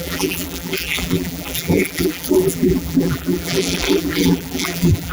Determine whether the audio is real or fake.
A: fake